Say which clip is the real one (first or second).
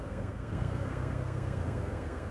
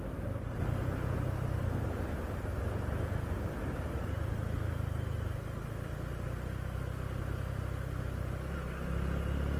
second